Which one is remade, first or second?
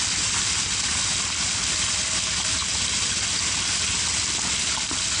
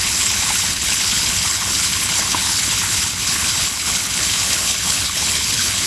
second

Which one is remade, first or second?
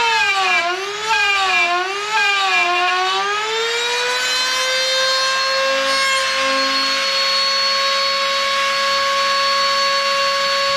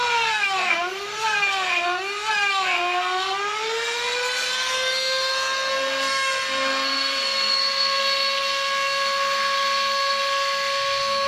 second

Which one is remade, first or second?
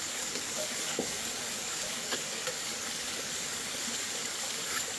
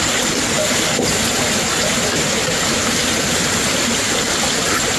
first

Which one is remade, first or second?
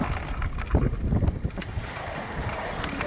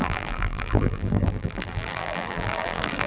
second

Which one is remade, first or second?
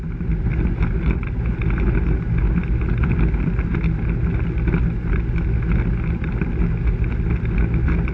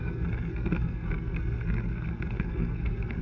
second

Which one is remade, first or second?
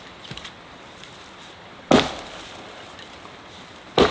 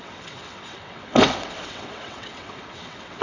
second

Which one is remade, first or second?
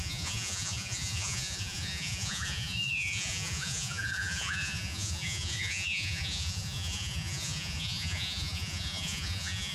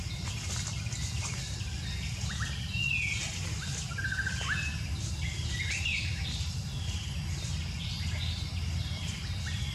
first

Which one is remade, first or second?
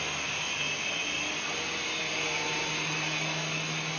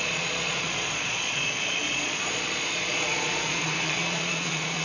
second